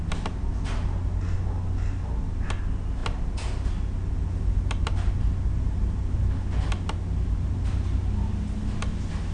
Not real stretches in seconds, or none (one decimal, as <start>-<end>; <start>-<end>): none